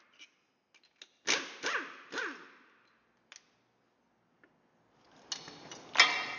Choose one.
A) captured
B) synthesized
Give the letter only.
A